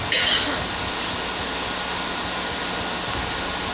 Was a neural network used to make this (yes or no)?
no